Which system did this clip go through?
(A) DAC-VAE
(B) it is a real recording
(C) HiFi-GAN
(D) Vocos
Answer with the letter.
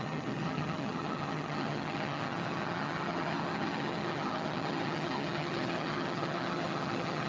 C